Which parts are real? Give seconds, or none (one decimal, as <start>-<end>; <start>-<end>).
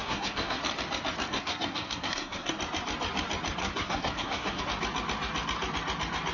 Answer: 0.6-1.3; 2.5-3.6; 4.6-6.3